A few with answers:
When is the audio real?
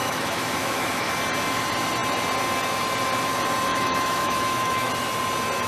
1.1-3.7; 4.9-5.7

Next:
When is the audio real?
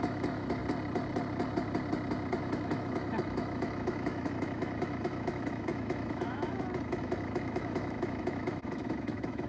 0.6-2.4